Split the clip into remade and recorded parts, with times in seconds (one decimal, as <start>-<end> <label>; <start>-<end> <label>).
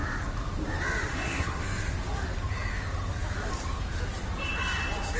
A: 0.0-1.1 recorded; 1.1-1.6 remade; 1.6-5.2 recorded